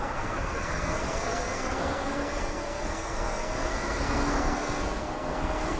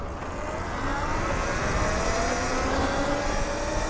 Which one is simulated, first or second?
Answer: first